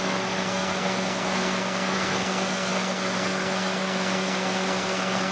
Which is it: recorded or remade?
remade